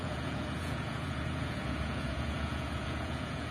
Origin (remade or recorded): remade